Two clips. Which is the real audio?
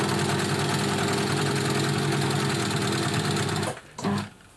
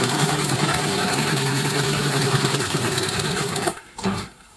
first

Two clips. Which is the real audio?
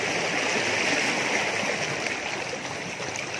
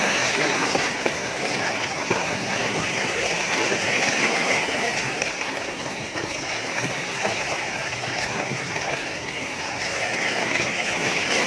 first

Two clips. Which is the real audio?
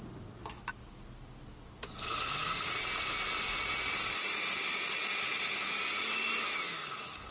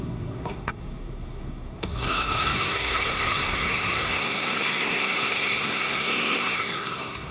first